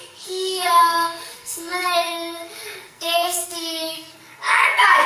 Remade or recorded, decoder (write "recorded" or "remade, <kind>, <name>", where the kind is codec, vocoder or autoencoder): remade, codec, SNAC